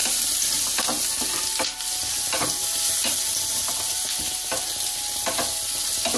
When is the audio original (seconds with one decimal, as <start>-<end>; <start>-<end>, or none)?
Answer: 0.0-6.2